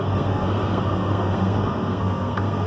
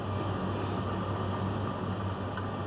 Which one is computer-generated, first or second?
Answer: first